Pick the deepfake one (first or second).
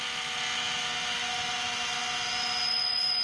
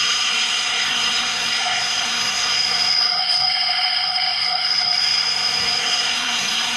second